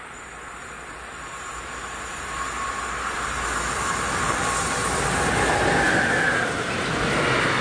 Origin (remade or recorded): recorded